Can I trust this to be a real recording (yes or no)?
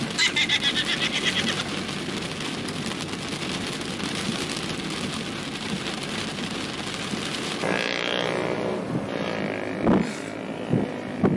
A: yes